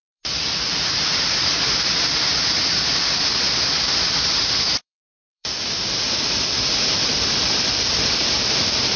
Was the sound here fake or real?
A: fake